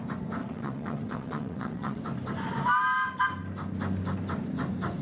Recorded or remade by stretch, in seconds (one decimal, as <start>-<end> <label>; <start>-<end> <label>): 0.0-0.4 recorded; 0.4-2.0 remade; 2.0-5.0 recorded